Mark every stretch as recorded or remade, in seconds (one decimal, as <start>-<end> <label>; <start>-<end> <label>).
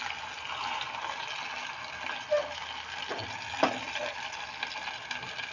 0.0-5.5 recorded